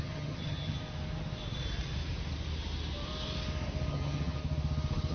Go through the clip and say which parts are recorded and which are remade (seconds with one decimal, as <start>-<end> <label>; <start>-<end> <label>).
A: 0.0-0.8 remade; 0.8-3.9 recorded; 3.9-4.4 remade; 4.4-5.1 recorded